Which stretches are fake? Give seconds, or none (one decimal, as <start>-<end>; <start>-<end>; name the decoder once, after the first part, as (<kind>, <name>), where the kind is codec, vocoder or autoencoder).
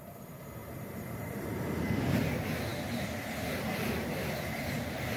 0.6-1.6 (vocoder, BigVGAN v2)